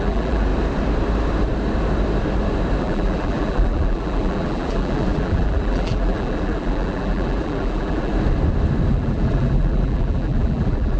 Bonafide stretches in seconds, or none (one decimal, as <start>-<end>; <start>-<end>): 0.5-2.8; 8.1-8.9

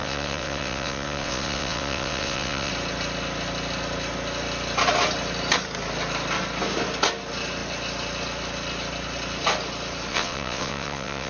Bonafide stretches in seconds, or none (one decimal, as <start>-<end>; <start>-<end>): 2.7-10.1

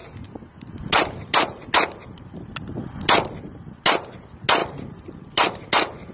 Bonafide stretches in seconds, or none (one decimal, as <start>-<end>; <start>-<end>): 0.0-4.6; 5.6-6.1

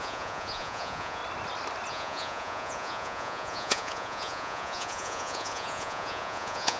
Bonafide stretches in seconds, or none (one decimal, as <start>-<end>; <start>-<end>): 1.2-1.9

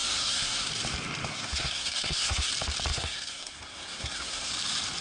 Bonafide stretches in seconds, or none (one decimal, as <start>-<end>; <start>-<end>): 0.7-1.3; 2.5-2.9; 4.5-5.0

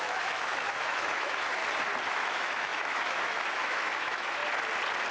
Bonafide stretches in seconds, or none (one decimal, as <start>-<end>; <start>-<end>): 1.6-2.1; 4.4-5.1

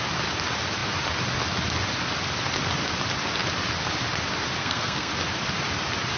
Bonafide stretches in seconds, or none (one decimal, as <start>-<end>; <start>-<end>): 0.0-4.6; 5.1-6.2

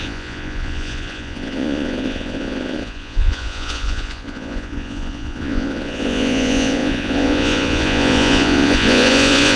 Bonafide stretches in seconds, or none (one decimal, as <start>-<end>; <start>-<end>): none